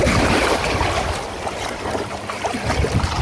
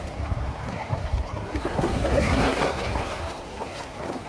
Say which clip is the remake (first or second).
second